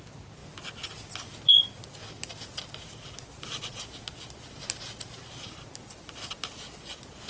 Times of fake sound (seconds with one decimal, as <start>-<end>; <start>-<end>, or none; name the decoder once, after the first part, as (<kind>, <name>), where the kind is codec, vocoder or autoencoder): none